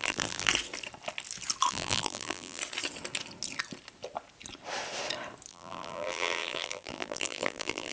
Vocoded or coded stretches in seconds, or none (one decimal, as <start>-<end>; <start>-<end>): 0.0-0.5; 1.7-2.6; 5.5-7.9